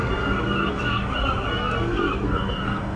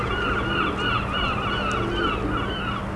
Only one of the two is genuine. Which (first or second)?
second